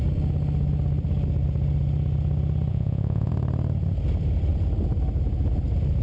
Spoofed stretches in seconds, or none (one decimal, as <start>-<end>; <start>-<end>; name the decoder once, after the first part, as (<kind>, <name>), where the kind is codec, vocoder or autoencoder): 2.7-3.3 (vocoder, Vocos)